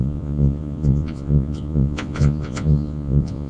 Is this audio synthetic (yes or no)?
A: yes